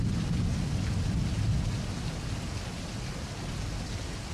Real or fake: real